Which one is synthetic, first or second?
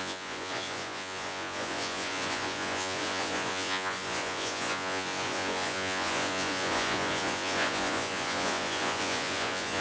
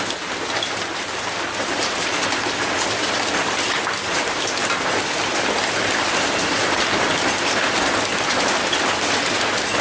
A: first